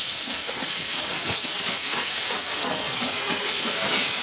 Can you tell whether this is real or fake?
fake